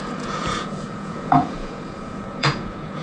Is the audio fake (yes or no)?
yes